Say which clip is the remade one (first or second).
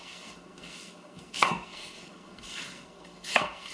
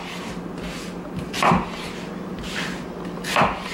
first